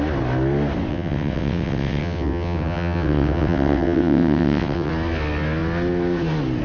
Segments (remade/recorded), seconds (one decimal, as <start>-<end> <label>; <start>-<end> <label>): 0.0-0.9 recorded; 0.9-4.9 remade; 4.9-6.6 recorded